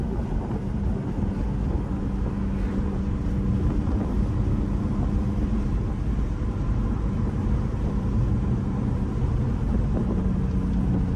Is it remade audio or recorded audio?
recorded